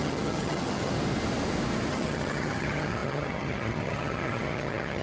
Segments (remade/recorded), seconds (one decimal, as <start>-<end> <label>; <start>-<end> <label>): 0.0-0.9 remade; 0.9-1.9 recorded; 1.9-5.0 remade